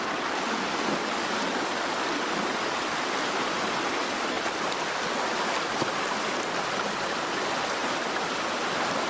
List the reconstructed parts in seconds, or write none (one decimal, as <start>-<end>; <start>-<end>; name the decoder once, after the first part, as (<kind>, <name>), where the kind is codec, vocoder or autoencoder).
7.8-9.1 (vocoder, BigVGAN v2)